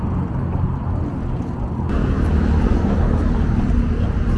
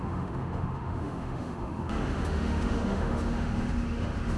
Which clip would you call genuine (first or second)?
first